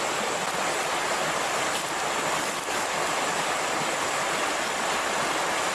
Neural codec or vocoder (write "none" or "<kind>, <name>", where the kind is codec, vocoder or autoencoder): none